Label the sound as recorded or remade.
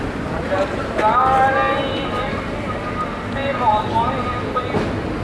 recorded